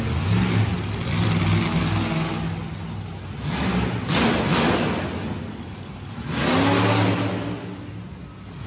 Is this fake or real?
real